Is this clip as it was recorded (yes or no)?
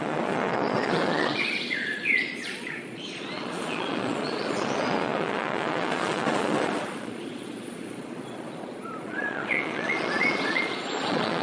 no